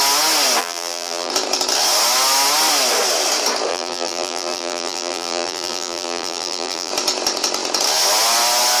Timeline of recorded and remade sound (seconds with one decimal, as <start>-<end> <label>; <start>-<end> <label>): 0.0-0.6 recorded; 0.6-1.3 remade; 1.3-3.7 recorded; 3.7-6.9 remade; 6.9-8.8 recorded

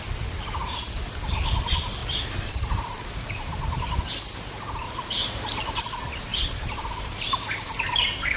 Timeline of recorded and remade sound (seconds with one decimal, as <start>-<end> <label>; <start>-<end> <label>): 0.0-2.0 recorded; 2.0-4.0 remade; 4.0-5.2 recorded; 5.2-5.8 remade; 5.8-6.3 recorded; 6.3-7.0 remade; 7.0-8.4 recorded

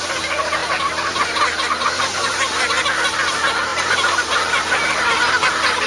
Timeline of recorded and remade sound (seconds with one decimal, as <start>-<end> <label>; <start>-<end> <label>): 0.0-3.7 recorded; 3.7-5.2 remade; 5.2-5.9 recorded

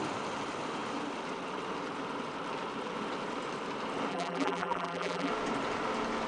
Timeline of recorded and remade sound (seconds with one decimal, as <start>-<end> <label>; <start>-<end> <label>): 0.0-4.1 recorded; 4.1-5.3 remade; 5.3-6.3 recorded